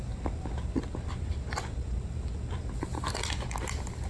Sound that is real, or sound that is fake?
real